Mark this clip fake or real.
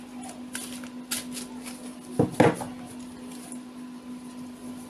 real